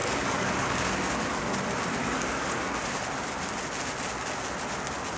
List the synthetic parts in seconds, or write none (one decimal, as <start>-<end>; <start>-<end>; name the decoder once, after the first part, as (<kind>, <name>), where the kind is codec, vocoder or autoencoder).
0.0-1.6 (codec, DAC); 2.0-2.6